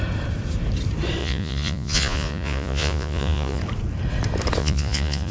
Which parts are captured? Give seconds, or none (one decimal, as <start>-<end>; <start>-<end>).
0.0-1.2; 3.6-4.6